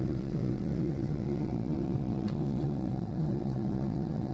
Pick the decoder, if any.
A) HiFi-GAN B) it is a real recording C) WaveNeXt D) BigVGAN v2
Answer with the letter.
C